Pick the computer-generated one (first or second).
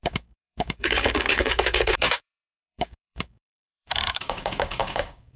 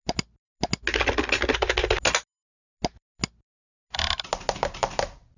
first